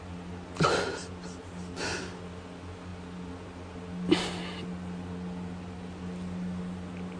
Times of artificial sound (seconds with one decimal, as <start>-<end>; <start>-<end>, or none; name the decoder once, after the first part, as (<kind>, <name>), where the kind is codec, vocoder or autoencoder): none